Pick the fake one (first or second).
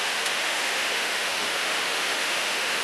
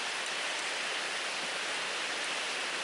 first